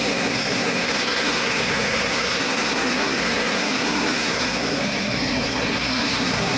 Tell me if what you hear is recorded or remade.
remade